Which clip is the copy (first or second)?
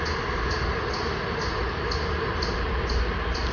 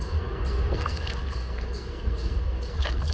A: second